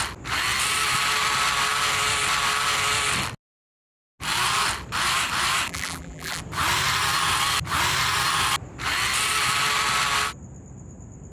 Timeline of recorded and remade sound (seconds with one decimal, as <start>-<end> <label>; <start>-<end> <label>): 0.0-5.7 recorded; 5.7-6.4 remade; 6.4-11.3 recorded